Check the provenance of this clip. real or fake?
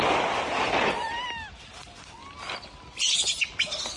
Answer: real